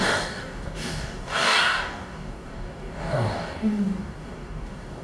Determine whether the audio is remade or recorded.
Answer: remade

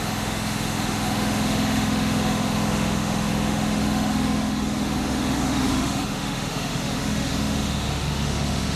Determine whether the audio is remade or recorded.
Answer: remade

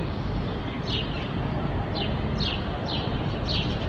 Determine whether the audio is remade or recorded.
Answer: recorded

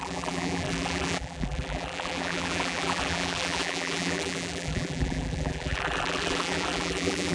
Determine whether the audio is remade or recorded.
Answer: remade